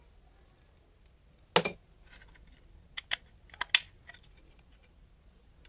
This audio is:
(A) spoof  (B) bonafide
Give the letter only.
B